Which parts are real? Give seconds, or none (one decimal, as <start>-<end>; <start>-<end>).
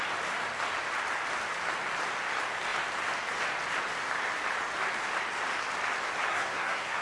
0.0-6.3